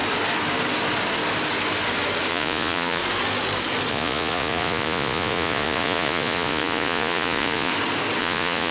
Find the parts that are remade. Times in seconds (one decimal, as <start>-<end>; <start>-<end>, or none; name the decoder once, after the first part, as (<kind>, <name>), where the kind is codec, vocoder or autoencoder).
2.3-3.0 (vocoder, Vocos); 3.9-7.7; 8.2-8.7